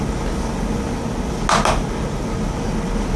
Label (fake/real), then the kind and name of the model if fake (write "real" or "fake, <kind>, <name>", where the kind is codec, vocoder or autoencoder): real